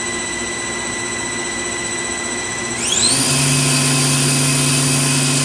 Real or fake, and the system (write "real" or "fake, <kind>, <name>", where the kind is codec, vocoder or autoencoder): real